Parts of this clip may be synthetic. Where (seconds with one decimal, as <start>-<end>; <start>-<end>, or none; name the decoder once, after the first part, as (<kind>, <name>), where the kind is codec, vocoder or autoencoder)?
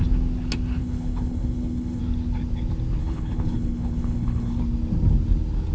0.8-2.0 (codec, HILCodec); 3.0-4.6